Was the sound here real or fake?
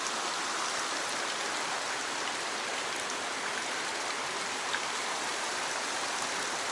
real